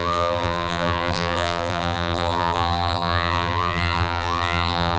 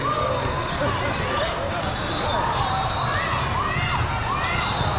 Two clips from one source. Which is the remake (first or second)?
first